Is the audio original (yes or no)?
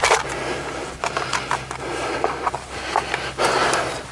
yes